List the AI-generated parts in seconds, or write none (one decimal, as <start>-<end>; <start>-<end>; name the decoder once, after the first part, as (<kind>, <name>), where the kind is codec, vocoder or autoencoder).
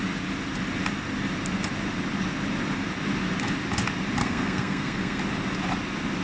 4.2-5.2 (codec, SNAC)